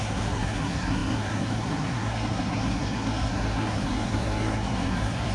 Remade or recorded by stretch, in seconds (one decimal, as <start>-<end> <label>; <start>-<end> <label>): 0.0-5.3 remade